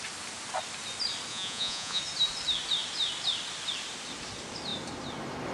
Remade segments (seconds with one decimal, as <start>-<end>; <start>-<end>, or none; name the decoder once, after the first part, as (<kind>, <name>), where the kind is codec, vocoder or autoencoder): 1.3-2.0 (vocoder, Vocos)